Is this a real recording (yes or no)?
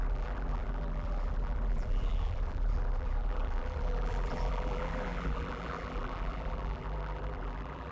no